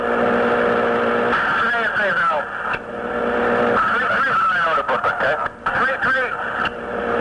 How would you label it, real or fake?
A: real